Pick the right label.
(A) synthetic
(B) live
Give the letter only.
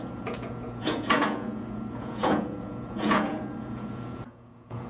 A